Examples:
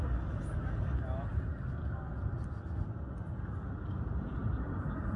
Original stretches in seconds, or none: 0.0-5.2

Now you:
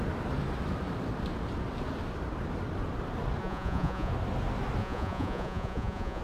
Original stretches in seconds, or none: 0.0-3.4; 4.1-4.8

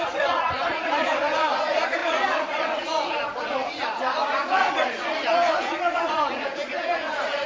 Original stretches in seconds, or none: none